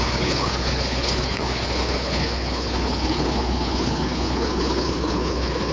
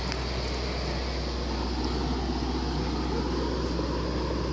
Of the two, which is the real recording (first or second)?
second